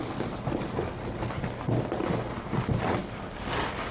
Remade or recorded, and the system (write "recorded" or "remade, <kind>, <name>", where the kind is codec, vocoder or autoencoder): recorded